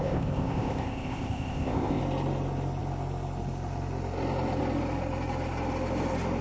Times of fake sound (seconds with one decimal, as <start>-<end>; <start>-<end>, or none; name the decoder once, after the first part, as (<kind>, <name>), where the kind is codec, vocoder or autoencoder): 0.0-2.0 (codec, ZipCodec)